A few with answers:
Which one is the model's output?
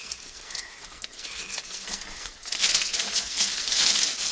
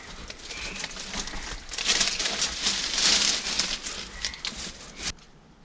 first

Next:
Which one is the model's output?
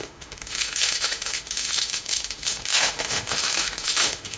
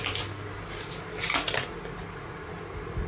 first